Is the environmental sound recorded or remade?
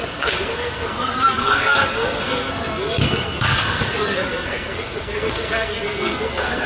remade